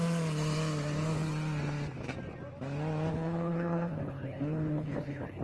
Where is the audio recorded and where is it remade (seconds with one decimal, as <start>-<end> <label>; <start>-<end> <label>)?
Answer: 0.0-3.1 recorded; 3.1-5.4 remade